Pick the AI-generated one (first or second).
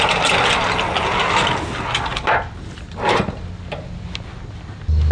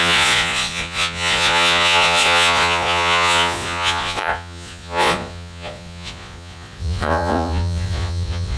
second